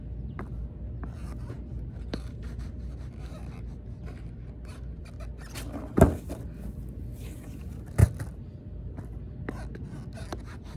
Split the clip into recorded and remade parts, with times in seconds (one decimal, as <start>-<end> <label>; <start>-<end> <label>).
0.0-1.2 recorded; 1.2-5.0 remade; 5.0-10.8 recorded